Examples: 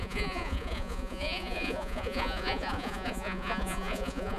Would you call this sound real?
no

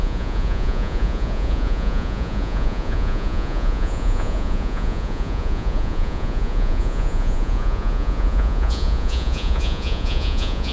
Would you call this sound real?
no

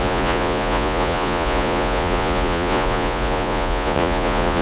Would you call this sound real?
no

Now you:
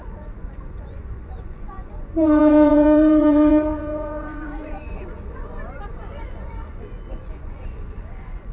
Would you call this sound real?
no